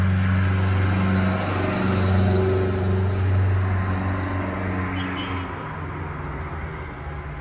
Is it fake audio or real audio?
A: real